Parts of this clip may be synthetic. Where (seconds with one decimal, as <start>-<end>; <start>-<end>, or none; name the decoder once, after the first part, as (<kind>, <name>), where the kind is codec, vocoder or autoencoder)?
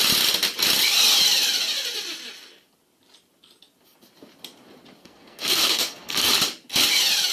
5.0-6.3 (codec, SNAC)